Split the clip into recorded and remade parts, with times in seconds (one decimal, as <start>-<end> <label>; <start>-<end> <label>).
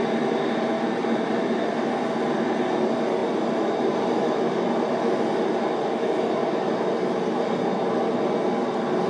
0.0-1.0 recorded; 1.0-1.9 remade; 1.9-9.1 recorded